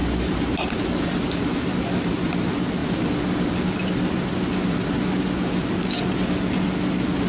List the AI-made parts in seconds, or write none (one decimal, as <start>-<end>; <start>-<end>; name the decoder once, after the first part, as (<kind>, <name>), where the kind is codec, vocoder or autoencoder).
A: 0.0-0.8 (vocoder, BigVGAN v2)